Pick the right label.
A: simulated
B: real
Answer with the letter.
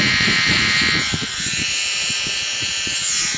A